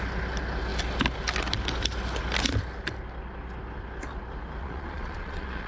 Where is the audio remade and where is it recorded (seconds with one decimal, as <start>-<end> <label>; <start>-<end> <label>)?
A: 0.0-4.6 recorded; 4.6-5.7 remade